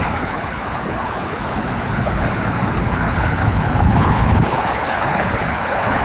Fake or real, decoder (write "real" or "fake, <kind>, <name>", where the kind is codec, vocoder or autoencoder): fake, codec, HILCodec